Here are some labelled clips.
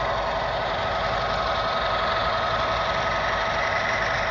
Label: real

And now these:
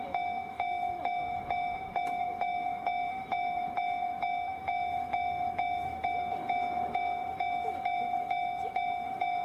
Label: fake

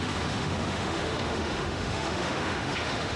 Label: fake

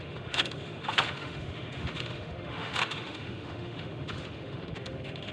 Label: fake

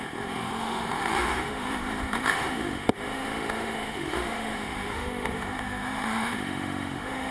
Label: fake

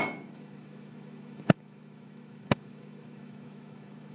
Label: fake